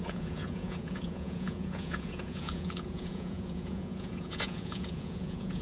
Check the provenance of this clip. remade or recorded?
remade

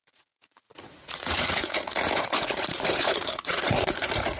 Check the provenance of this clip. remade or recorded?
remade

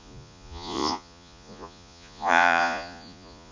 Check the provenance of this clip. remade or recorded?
remade